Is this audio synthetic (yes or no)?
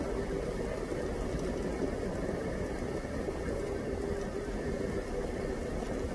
no